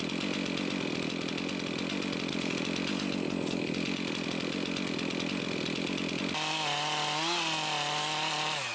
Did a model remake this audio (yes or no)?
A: no